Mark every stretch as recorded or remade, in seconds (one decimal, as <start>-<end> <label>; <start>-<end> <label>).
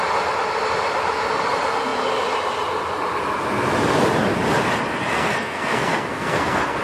0.0-5.1 recorded; 5.1-6.8 remade